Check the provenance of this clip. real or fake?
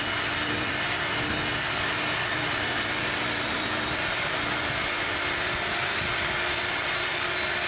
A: real